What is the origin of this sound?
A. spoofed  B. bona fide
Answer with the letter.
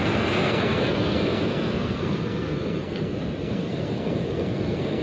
A